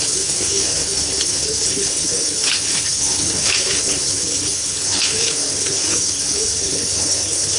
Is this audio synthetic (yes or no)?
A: yes